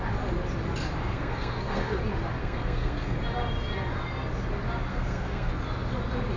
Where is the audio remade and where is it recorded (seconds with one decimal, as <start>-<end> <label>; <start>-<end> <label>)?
0.0-1.0 recorded; 1.0-2.0 remade; 2.0-2.4 recorded; 2.4-3.2 remade; 3.2-4.9 recorded; 4.9-5.5 remade; 5.5-6.4 recorded